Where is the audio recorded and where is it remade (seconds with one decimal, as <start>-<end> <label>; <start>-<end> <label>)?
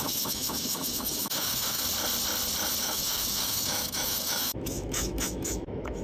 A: 0.0-1.8 remade; 1.8-2.8 recorded; 2.8-6.0 remade